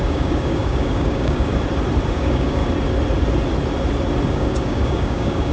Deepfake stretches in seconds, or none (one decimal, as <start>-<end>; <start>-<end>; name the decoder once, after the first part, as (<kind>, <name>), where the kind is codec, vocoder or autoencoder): 0.0-1.5 (codec, DAC); 2.1-2.6; 4.3-5.5